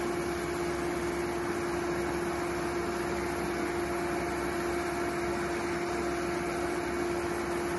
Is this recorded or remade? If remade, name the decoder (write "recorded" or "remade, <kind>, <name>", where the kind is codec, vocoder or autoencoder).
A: recorded